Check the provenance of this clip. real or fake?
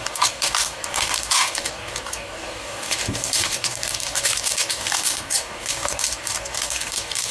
fake